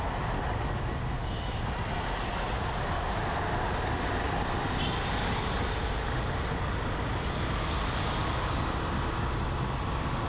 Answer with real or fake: real